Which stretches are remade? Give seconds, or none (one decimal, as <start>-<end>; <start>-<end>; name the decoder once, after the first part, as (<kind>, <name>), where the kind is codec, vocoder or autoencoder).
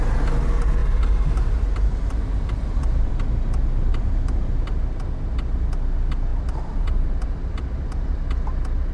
0.8-3.1 (vocoder, BigVGAN v2); 3.9-5.0; 6.3-7.4